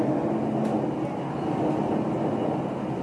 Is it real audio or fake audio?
real